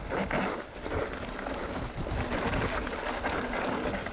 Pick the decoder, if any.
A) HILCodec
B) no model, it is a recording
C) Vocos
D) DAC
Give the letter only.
B